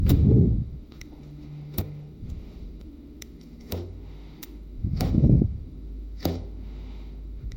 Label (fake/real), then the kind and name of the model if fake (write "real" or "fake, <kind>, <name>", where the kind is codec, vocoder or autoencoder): fake, autoencoder, DAC-VAE